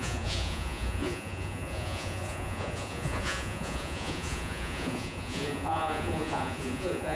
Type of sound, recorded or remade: remade